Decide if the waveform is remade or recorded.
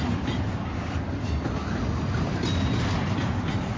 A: recorded